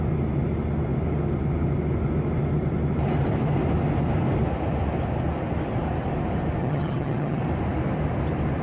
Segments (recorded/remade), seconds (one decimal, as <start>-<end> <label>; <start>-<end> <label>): 0.0-6.6 recorded; 6.6-7.4 remade; 7.4-8.6 recorded